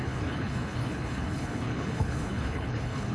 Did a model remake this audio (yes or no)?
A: yes